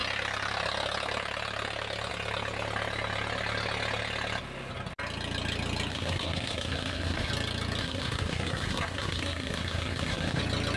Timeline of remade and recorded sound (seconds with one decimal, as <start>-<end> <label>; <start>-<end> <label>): 0.0-5.9 recorded; 5.9-7.3 remade; 7.3-7.8 recorded; 7.8-10.4 remade; 10.4-10.8 recorded